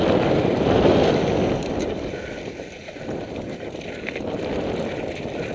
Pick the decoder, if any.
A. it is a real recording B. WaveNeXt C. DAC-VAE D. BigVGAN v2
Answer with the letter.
D